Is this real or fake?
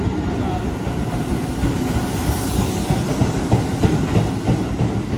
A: real